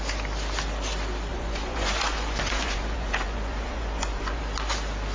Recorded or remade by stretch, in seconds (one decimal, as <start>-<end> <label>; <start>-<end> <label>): 0.0-1.3 recorded; 1.3-4.4 remade; 4.4-5.1 recorded